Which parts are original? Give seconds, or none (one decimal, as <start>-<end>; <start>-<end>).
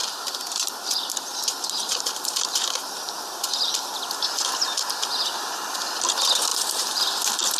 3.7-6.5; 7.0-7.6